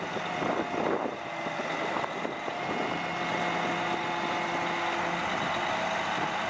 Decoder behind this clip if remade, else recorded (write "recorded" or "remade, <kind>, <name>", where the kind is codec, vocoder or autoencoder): recorded